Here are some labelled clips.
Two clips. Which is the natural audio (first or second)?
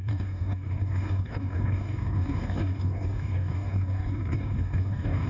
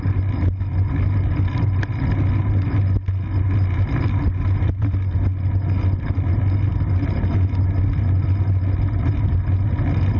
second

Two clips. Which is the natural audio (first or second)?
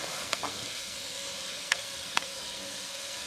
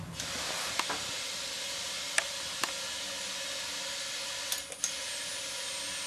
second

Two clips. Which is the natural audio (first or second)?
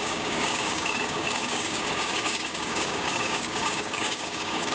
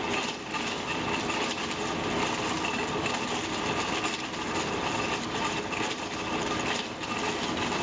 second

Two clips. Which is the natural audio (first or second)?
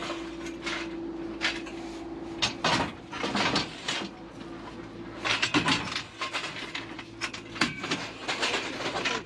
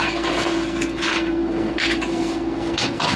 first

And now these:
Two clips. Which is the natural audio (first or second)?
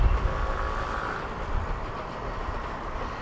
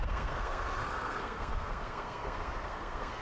first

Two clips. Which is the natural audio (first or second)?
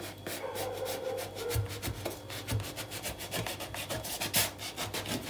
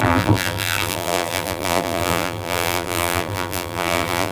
first